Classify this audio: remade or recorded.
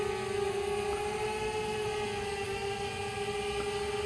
recorded